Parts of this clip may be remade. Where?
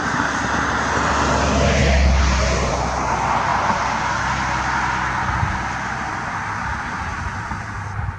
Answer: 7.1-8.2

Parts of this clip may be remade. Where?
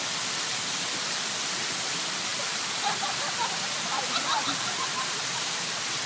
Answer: 0.0-6.1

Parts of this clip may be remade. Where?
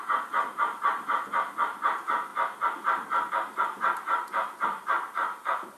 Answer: 0.0-2.3; 3.3-5.8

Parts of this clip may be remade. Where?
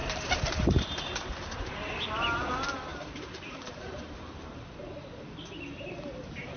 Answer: 0.0-2.5; 2.9-5.4